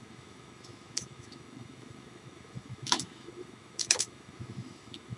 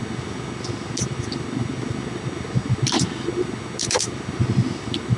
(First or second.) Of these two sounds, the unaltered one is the second